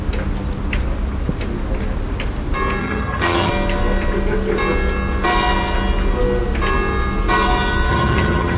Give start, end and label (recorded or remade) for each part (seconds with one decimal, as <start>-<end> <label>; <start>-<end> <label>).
0.0-2.8 recorded; 2.8-3.5 remade; 3.5-7.9 recorded; 7.9-8.6 remade